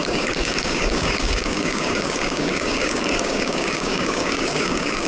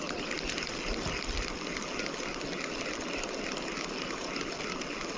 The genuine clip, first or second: second